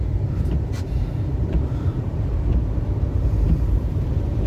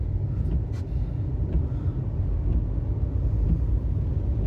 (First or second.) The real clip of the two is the second